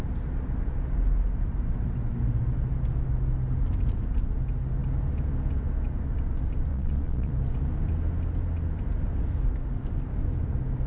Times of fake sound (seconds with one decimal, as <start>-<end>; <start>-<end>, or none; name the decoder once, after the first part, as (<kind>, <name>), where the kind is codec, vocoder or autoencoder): 6.7-7.3 (vocoder, Vocos)